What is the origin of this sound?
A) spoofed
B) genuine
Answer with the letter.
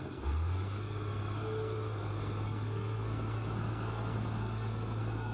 A